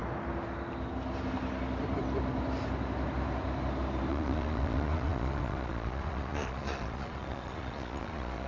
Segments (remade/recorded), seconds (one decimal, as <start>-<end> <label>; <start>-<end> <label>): 0.0-4.1 recorded; 4.1-8.5 remade